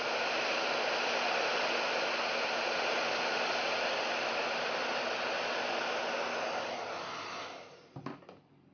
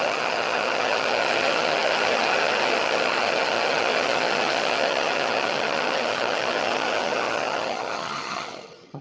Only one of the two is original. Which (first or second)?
first